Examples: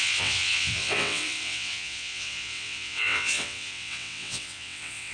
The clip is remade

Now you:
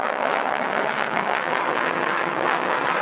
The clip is remade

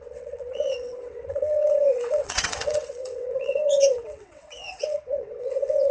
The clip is remade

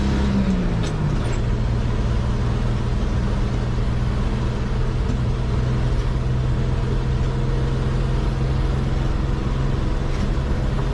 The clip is recorded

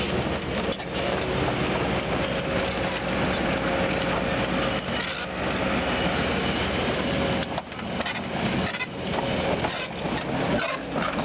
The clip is recorded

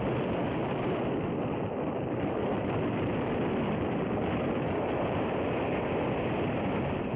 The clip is recorded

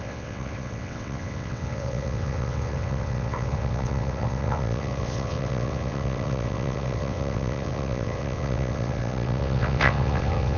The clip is remade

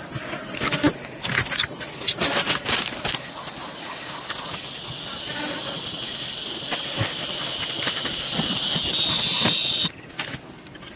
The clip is recorded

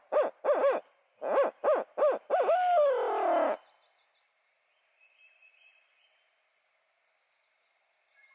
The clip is recorded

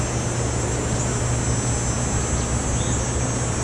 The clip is recorded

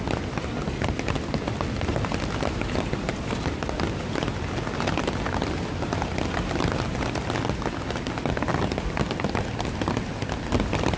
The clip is recorded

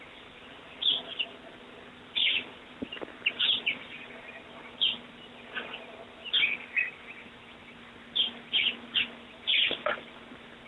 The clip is recorded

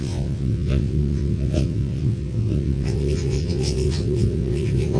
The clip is remade